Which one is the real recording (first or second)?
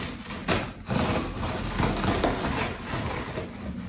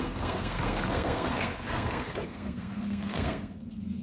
first